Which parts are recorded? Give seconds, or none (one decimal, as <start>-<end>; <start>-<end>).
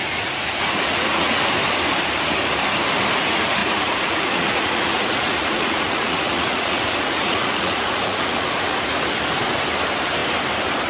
1.5-3.6; 8.5-10.9